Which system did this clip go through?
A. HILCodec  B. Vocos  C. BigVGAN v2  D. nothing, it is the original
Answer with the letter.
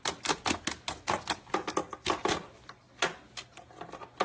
D